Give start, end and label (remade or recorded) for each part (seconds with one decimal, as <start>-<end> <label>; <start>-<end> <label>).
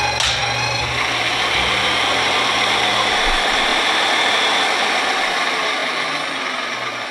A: 0.0-7.1 recorded